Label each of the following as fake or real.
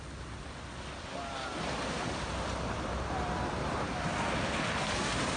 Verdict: real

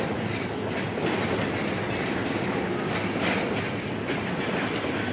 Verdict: real